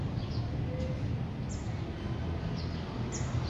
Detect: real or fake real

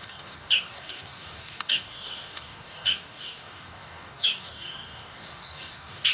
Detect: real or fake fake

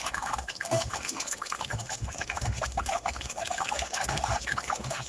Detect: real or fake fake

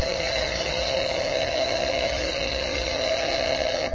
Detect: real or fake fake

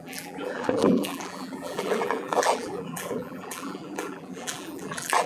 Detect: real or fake fake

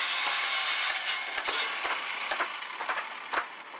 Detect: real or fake real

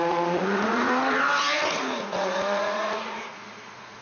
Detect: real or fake fake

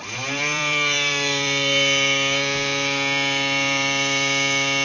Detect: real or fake fake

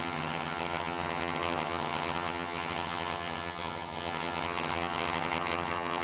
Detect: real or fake fake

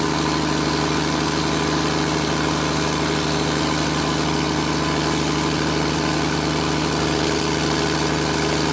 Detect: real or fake real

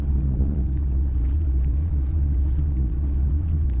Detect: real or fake fake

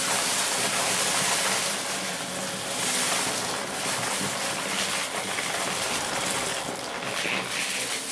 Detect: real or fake real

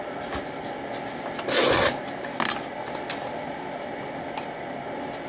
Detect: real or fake real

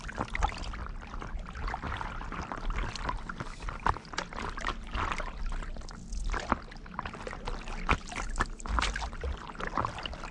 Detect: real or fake real